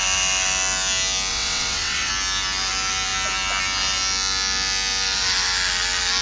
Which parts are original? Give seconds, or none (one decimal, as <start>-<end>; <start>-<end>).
0.0-1.3; 2.1-6.2